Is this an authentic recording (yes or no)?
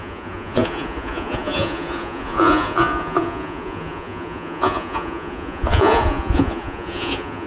no